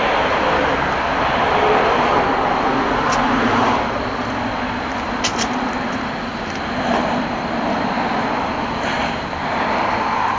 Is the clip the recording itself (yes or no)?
yes